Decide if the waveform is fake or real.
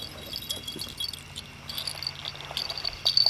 real